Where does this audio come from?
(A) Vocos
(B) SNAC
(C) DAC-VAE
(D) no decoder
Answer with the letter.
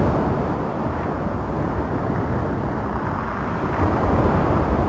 D